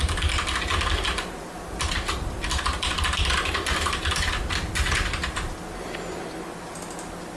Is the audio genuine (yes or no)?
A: yes